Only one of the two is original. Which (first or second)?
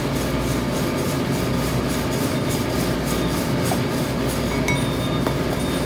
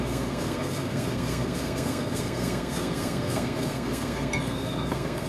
first